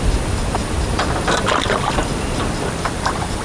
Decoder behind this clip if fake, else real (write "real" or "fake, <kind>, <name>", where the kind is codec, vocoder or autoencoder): fake, vocoder, BigVGAN v2